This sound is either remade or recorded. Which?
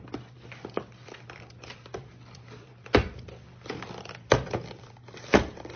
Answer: remade